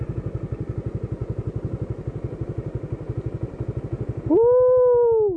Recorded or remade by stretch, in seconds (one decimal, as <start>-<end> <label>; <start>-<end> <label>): 0.0-5.4 recorded